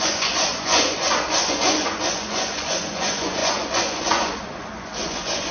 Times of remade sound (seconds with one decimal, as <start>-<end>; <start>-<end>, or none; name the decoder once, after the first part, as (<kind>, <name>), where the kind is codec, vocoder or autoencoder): 0.0-5.5 (vocoder, Vocos)